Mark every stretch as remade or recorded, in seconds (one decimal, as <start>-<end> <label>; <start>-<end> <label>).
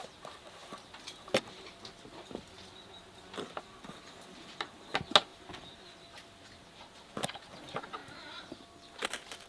0.0-5.3 recorded; 5.3-6.1 remade; 6.1-9.5 recorded